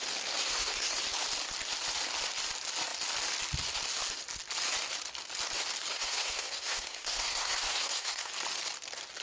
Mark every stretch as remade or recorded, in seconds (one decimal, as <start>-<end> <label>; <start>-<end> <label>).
0.0-0.4 recorded; 0.4-1.0 remade; 1.0-5.9 recorded; 5.9-8.3 remade; 8.3-9.2 recorded